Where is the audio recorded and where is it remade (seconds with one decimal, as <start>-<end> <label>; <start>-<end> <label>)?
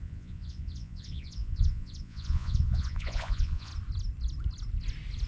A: 0.0-3.7 remade; 3.7-5.3 recorded